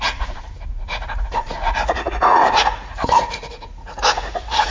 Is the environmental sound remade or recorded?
remade